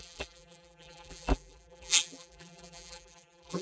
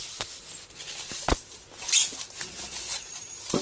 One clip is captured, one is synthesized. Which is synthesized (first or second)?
first